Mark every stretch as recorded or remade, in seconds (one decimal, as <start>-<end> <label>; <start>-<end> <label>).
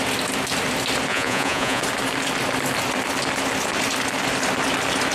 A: 0.0-1.1 recorded; 1.1-1.8 remade; 1.8-5.1 recorded